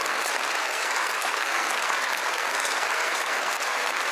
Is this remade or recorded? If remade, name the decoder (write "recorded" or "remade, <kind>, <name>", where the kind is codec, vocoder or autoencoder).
remade, codec, SNAC